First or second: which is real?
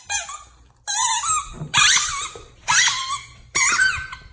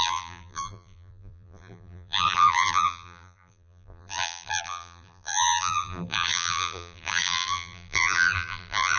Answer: first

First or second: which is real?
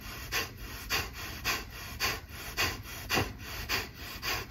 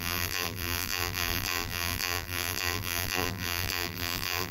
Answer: first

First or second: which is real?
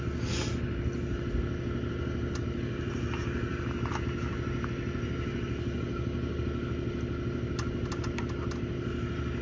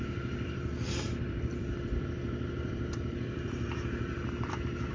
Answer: first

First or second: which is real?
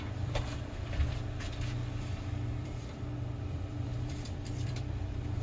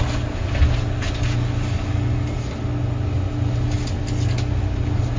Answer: second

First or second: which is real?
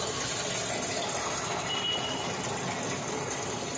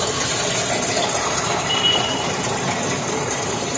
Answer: first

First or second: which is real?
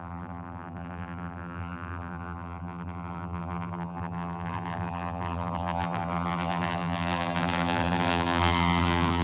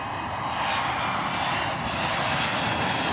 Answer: second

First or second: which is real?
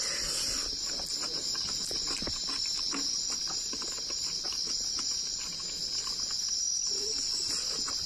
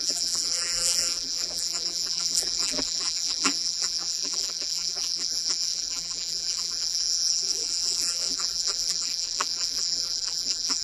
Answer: first